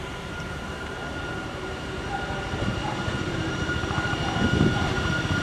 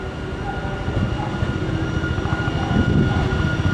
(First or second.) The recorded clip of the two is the second